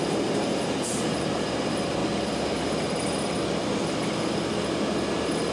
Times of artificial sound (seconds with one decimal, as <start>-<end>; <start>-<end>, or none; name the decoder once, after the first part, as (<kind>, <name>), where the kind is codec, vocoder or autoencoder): 0.0-2.0 (vocoder, BigVGAN v2)